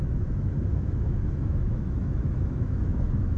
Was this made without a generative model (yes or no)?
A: no